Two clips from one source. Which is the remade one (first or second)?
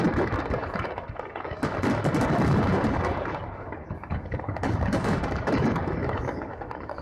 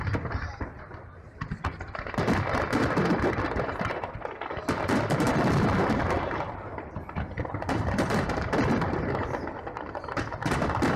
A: first